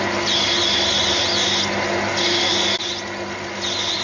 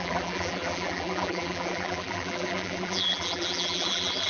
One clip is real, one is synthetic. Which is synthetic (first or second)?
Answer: second